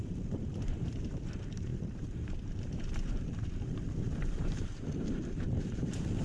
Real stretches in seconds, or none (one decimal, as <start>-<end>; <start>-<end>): none